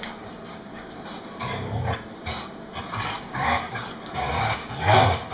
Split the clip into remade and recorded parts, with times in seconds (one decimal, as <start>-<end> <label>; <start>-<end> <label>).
0.0-0.7 remade; 0.7-3.2 recorded; 3.2-3.9 remade; 3.9-4.4 recorded; 4.4-5.3 remade